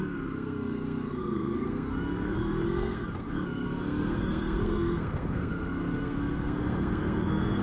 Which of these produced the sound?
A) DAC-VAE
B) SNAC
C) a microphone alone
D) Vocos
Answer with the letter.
B